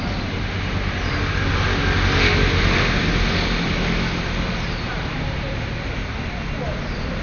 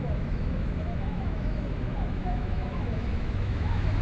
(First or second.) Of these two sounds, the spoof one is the second